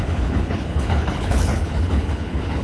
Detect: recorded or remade remade